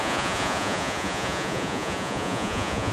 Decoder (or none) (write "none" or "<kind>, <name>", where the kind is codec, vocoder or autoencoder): vocoder, Vocos